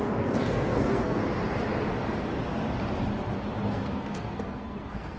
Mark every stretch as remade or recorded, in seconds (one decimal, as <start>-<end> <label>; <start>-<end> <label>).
0.0-1.2 remade; 1.2-3.7 recorded; 3.7-5.2 remade